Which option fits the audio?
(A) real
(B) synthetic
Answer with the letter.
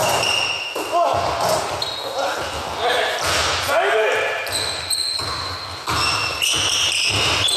A